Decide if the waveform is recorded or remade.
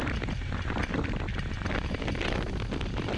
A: recorded